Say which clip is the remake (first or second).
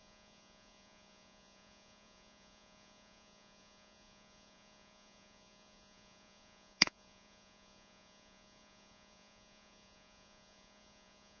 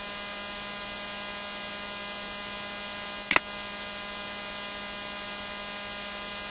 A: first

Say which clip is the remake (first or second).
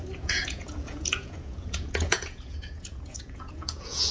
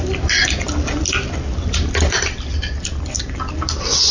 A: first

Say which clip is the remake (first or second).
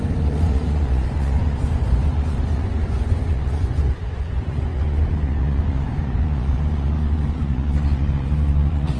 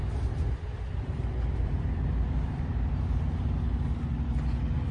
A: first